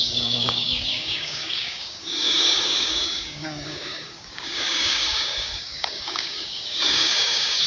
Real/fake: fake